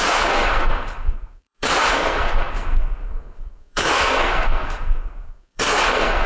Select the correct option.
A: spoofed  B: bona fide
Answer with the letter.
A